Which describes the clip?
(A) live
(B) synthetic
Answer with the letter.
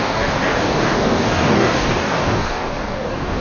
B